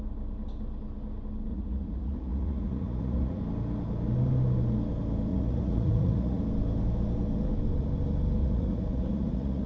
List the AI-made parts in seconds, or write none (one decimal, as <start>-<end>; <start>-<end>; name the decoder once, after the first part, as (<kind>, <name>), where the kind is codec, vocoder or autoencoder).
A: 1.5-3.4 (vocoder, Vocos); 5.3-6.4; 8.4-9.7